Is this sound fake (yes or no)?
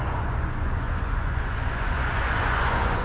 yes